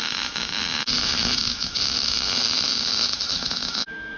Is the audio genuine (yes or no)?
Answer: no